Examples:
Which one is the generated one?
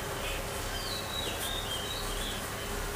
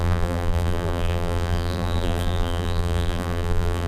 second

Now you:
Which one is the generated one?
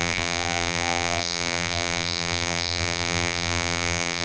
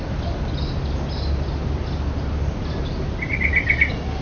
first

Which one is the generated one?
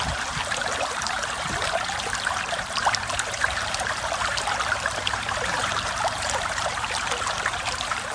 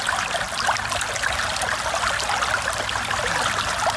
first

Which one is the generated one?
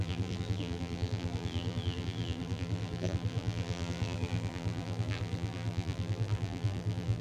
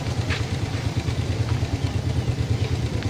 first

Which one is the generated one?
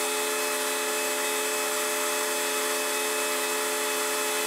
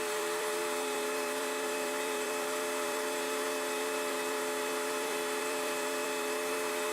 second